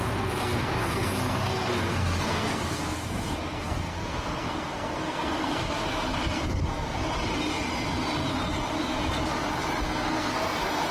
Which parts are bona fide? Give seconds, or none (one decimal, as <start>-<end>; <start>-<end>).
7.0-9.8